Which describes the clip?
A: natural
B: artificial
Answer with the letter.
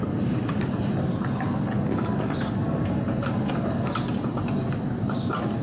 A